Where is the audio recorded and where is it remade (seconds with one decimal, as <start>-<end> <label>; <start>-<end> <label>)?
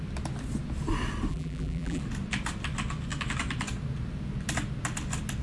0.0-1.3 recorded; 1.3-2.0 remade; 2.0-5.4 recorded